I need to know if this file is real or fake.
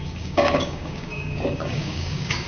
fake